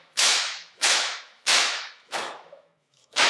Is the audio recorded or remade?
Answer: remade